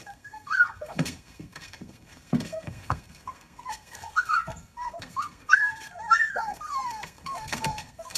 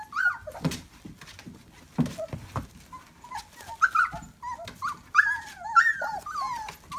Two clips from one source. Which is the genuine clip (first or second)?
second